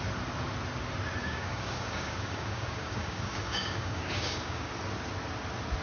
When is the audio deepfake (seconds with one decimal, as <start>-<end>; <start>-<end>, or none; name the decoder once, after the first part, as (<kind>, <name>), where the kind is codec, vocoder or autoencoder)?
1.2-4.7 (codec, DAC)